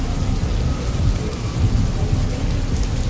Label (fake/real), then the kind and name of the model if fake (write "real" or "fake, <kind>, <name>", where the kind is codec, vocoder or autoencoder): real